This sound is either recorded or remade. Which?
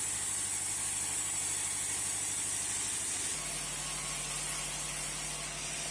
recorded